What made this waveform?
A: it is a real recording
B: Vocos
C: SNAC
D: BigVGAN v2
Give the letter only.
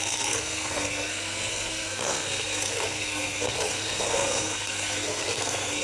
C